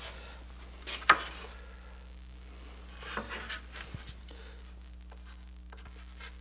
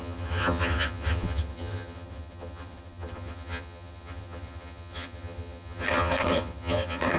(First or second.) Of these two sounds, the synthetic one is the second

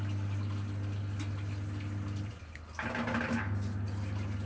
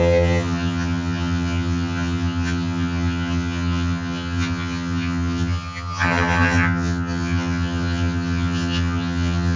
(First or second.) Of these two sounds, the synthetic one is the second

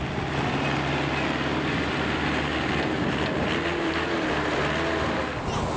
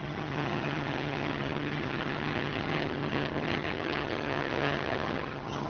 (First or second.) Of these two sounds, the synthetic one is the second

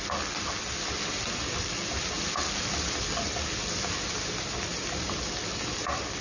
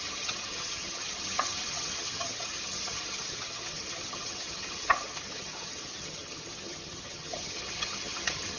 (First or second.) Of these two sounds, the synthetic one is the second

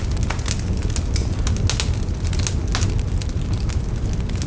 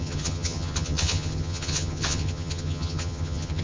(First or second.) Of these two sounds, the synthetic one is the second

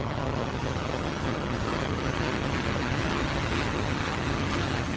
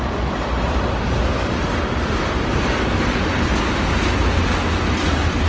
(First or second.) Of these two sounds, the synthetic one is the first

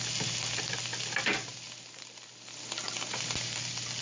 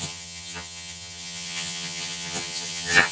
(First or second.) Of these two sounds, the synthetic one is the second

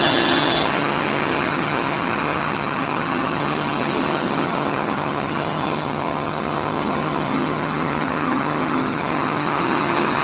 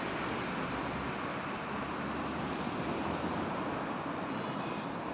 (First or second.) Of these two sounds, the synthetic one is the first